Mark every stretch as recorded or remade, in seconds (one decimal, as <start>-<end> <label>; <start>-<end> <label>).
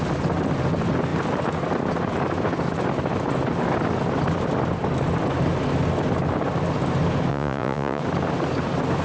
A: 0.0-7.3 recorded; 7.3-8.0 remade; 8.0-9.0 recorded